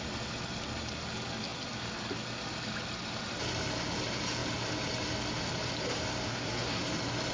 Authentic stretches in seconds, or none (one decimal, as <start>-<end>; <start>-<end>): 0.0-6.3; 6.8-7.3